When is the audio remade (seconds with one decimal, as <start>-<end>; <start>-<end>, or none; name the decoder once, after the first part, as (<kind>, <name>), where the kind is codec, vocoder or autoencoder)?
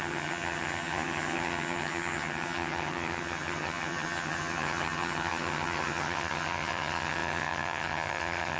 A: 0.0-8.6 (vocoder, HiFi-GAN)